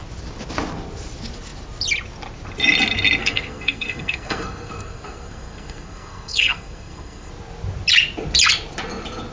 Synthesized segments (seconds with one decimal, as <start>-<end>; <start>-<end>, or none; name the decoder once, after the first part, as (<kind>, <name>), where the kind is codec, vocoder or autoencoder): 3.2-7.3 (codec, SNAC)